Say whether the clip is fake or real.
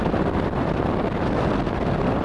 real